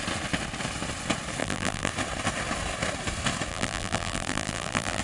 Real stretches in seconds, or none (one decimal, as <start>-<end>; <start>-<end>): 0.0-1.4; 1.9-3.5